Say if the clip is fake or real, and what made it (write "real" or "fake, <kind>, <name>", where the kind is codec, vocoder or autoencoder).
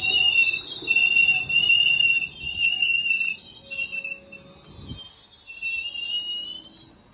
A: real